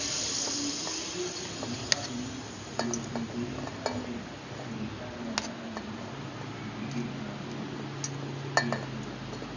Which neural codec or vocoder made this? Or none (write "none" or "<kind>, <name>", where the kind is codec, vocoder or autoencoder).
none